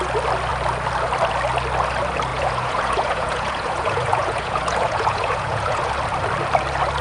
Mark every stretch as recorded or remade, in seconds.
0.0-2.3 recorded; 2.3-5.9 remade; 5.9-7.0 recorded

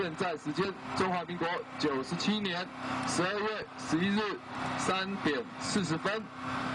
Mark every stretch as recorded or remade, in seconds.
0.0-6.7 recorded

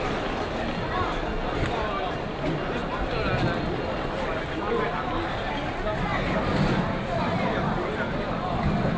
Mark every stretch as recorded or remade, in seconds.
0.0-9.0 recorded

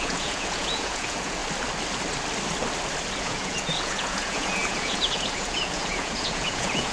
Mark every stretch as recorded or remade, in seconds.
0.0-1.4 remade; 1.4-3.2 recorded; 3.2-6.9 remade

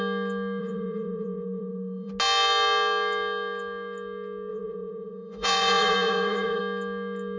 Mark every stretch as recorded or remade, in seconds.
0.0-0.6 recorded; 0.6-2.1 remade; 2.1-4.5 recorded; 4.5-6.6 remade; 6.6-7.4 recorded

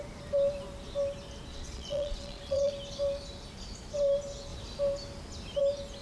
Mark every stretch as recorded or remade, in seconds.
0.0-1.5 recorded; 1.5-2.7 remade; 2.7-6.0 recorded

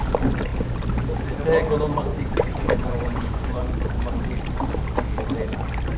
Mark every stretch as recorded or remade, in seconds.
0.0-2.0 recorded; 2.0-3.6 remade; 3.6-6.0 recorded

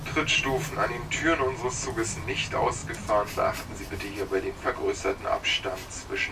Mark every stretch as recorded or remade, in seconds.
0.0-6.3 recorded